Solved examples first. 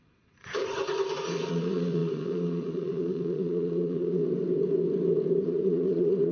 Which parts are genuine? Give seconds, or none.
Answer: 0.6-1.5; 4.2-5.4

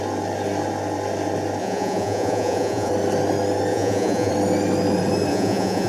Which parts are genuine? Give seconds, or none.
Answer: 0.0-1.6; 2.9-3.7; 4.3-5.3

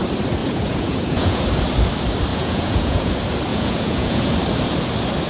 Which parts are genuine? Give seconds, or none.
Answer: 0.0-0.4; 1.4-2.3; 3.1-3.5; 4.3-5.3

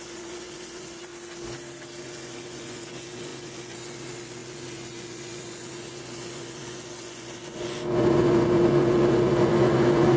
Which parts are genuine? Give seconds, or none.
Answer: 1.1-2.0

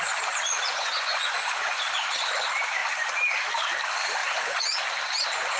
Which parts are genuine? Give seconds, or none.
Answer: 0.0-0.8; 1.8-5.6

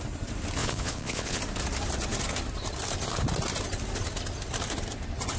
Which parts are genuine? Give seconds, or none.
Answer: 0.0-0.6; 1.4-5.4

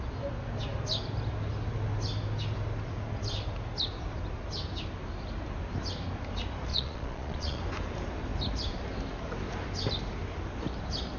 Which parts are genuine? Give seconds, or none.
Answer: 0.0-6.7; 7.6-11.2